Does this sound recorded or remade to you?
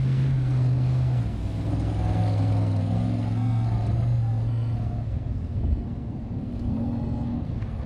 remade